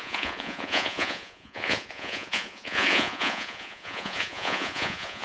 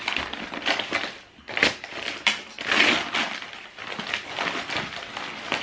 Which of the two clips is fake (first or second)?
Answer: first